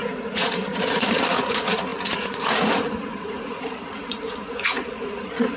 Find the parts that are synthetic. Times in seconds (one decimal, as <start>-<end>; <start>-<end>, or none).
0.0-5.6